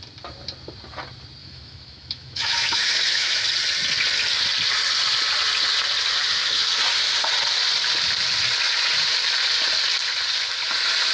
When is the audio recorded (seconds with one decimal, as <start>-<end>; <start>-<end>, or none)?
0.0-1.4; 3.4-6.3; 6.8-11.1

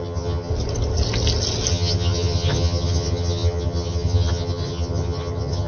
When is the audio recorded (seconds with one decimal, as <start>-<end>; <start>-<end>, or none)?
0.5-1.7

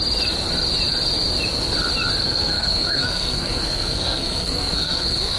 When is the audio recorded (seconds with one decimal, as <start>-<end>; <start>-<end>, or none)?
0.0-2.2